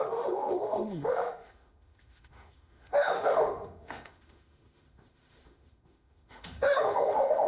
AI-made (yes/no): yes